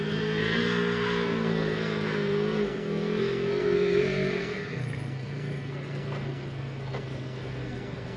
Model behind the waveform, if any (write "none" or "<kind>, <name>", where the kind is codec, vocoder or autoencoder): codec, SNAC